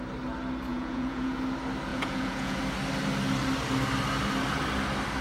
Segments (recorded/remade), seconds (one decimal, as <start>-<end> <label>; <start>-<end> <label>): 0.0-0.7 recorded; 0.7-1.4 remade; 1.4-1.9 recorded; 1.9-2.6 remade; 2.6-5.2 recorded